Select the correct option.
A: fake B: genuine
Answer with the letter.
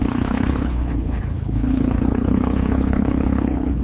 A